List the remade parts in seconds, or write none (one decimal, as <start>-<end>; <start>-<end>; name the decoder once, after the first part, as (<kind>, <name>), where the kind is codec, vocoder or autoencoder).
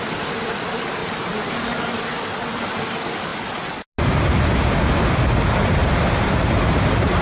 1.0-1.8 (vocoder, BigVGAN v2); 5.8-7.2